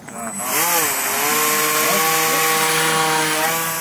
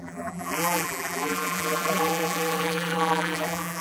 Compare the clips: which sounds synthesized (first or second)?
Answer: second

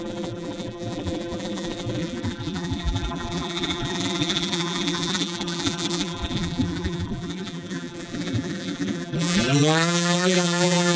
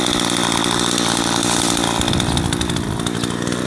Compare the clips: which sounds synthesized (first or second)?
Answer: first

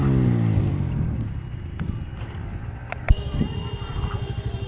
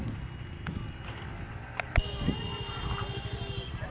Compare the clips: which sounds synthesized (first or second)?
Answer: first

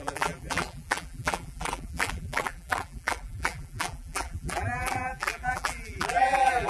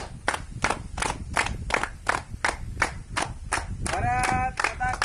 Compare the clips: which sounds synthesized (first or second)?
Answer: first